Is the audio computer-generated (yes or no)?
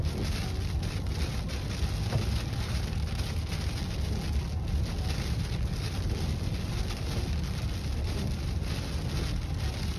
no